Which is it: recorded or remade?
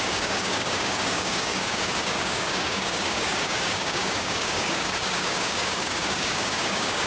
remade